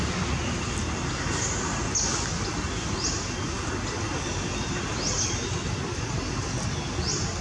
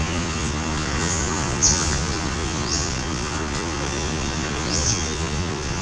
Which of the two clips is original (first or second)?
first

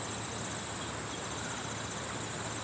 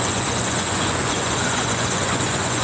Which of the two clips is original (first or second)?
first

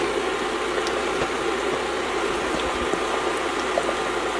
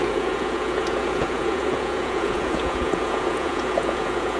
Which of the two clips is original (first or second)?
first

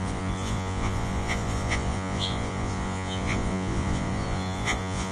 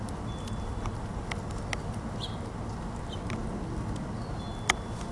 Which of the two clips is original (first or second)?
second